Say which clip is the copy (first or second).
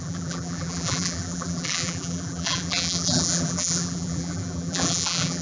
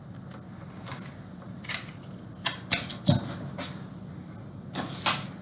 first